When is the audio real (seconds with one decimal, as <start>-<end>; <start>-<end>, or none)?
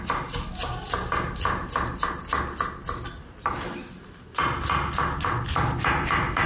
0.0-6.5